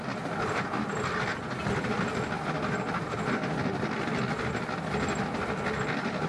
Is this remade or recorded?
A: recorded